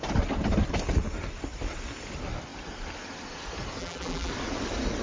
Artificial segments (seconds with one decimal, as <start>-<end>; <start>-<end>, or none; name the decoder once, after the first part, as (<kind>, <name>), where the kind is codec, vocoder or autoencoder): 3.8-4.3 (vocoder, BigVGAN v2)